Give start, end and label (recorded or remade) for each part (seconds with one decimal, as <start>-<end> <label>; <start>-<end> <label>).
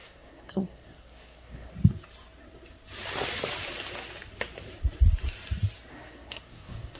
0.0-1.7 remade; 1.7-5.9 recorded; 5.9-7.0 remade